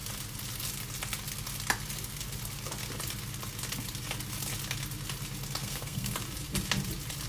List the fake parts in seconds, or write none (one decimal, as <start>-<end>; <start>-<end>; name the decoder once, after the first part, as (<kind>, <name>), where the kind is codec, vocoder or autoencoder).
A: 5.6-6.1 (codec, SNAC)